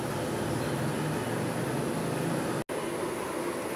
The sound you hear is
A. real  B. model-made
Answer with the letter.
A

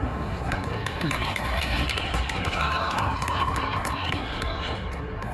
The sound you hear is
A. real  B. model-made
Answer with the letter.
B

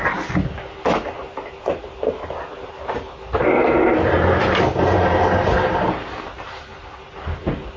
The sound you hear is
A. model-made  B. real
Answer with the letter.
B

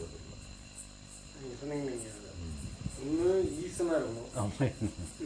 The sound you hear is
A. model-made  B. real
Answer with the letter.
B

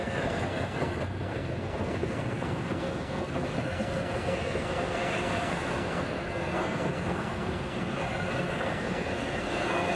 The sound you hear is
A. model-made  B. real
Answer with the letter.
A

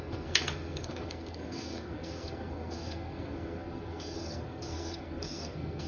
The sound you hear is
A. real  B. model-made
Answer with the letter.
B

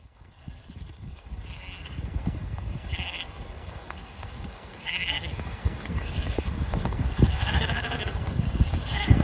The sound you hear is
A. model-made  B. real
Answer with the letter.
A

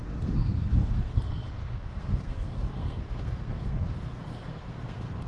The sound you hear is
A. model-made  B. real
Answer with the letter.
A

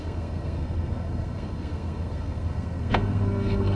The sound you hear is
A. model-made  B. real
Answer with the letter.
A